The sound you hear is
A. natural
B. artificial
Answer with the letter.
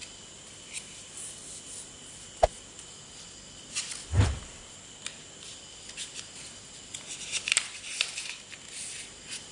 A